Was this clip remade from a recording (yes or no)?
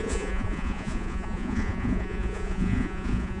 yes